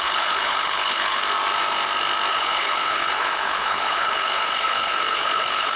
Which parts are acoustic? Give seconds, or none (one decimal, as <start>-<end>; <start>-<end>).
1.2-2.3